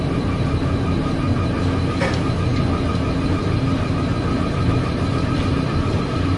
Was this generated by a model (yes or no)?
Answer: no